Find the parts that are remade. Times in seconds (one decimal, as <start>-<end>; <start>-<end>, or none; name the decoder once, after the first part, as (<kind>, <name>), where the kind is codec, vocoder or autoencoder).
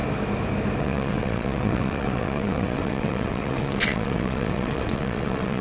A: 0.8-5.6 (vocoder, WaveNeXt)